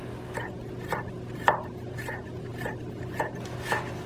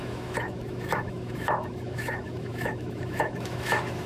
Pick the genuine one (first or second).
first